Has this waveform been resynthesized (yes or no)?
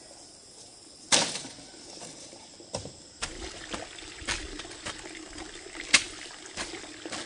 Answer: no